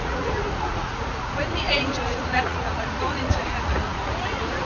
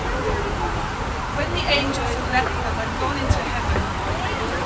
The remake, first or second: first